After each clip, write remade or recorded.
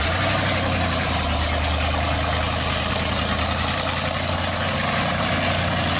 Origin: recorded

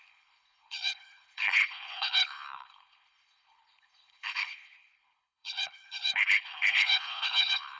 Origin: remade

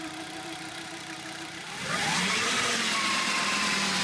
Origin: remade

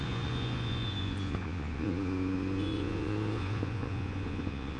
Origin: remade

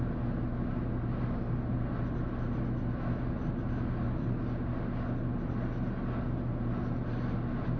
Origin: recorded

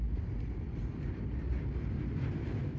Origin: recorded